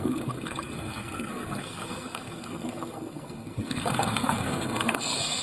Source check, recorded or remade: remade